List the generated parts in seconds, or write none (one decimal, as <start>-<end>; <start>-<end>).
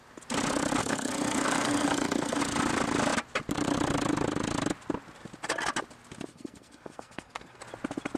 0.8-2.4; 6.3-7.6